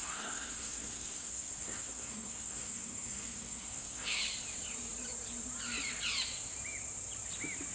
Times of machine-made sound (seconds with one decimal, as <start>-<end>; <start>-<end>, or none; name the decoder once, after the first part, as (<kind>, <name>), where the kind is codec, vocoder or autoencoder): 0.0-4.2 (codec, SNAC)